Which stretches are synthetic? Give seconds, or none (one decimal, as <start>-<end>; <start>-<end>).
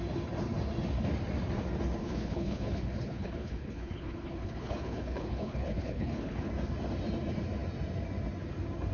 2.0-6.5